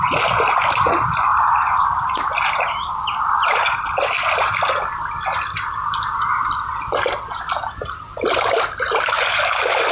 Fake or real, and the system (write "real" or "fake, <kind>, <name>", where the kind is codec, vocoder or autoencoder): real